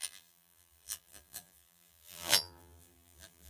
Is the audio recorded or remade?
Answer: remade